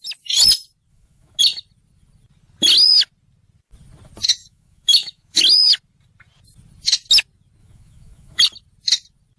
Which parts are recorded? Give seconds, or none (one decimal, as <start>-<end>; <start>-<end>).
0.0-0.9; 1.4-4.4; 5.4-7.6; 8.4-9.4